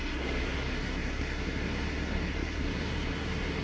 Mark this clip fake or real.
fake